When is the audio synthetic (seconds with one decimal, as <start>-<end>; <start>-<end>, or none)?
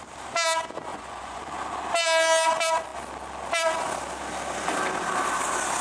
0.9-1.4